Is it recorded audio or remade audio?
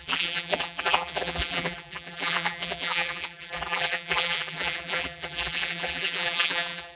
remade